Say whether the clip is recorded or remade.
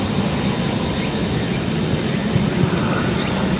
recorded